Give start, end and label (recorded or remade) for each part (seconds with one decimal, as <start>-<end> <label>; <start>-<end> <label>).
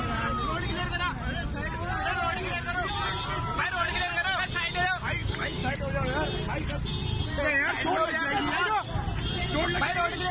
0.0-5.2 recorded; 5.2-5.8 remade; 5.8-10.3 recorded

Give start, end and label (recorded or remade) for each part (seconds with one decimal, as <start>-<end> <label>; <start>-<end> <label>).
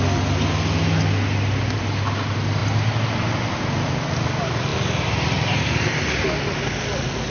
0.0-7.3 recorded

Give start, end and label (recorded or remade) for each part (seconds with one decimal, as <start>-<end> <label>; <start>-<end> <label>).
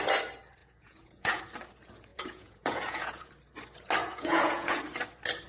0.0-0.6 recorded; 0.6-1.4 remade; 1.4-2.1 recorded; 2.1-3.3 remade; 3.3-4.0 recorded; 4.0-4.8 remade; 4.8-5.5 recorded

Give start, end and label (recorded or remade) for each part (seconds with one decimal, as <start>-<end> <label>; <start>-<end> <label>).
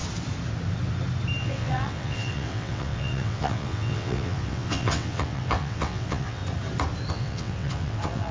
0.0-1.4 recorded; 1.4-6.4 remade; 6.4-7.1 recorded; 7.1-8.3 remade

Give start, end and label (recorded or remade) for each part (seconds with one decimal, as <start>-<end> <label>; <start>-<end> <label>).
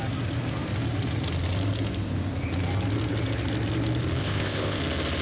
0.0-4.2 recorded; 4.2-4.8 remade; 4.8-5.2 recorded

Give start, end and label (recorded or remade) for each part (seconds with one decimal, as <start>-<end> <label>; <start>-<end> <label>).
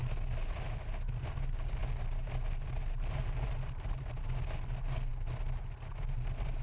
0.0-6.6 recorded